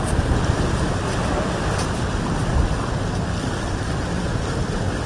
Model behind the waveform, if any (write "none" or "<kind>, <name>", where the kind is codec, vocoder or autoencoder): none